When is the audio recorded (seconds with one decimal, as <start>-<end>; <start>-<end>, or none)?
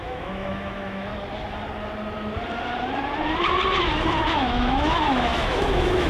1.1-4.2